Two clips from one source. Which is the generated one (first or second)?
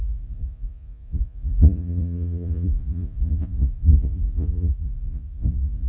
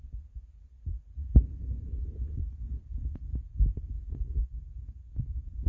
first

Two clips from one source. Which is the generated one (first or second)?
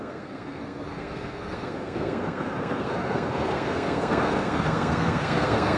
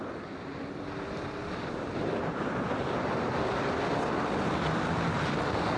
first